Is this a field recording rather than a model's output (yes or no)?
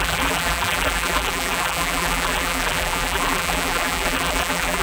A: no